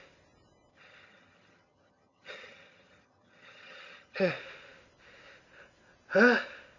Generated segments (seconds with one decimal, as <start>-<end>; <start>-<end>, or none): 0.7-4.3